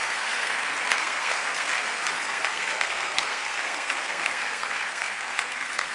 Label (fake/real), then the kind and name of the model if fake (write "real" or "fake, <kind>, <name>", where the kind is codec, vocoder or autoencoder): fake, codec, SNAC